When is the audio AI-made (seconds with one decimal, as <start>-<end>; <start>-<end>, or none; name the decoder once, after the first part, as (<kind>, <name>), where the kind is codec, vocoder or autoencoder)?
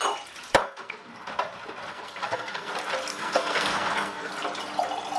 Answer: 0.6-1.1 (codec, SNAC); 1.9-2.7; 3.1-4.3